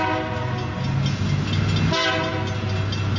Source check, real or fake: real